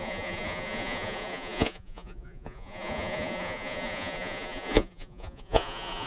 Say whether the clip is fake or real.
fake